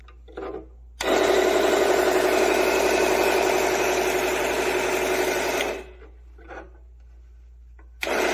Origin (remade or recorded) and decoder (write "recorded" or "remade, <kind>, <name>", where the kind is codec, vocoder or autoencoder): recorded